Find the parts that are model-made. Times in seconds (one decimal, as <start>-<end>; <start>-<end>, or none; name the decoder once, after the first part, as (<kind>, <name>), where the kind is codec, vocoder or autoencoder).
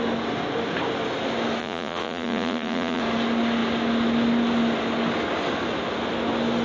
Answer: 1.6-3.0 (vocoder, Vocos)